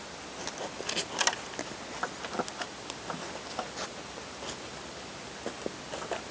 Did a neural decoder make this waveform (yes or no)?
no